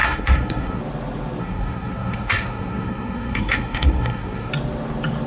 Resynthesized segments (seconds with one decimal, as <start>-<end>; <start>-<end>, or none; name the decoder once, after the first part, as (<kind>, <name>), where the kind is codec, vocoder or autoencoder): 0.0-0.8 (codec, SNAC); 1.4-4.5